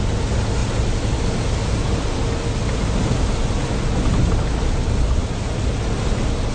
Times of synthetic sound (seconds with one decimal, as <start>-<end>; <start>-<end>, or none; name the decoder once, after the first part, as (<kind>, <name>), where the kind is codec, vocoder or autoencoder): none